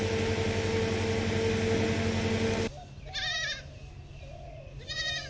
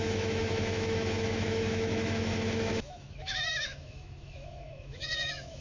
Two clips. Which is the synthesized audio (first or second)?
second